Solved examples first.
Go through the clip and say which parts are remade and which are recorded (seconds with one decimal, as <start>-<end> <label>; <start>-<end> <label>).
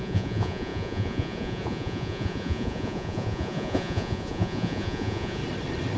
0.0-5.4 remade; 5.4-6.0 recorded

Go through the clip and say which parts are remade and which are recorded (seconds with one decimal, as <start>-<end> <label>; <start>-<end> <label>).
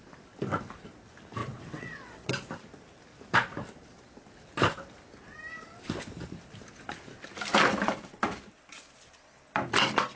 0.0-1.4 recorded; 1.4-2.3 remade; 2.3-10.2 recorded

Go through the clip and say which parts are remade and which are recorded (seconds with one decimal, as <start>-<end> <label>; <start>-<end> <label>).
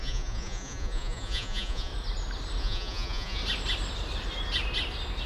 0.0-1.9 remade; 1.9-2.6 recorded; 2.6-3.4 remade; 3.4-5.3 recorded